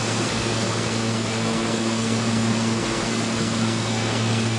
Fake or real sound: fake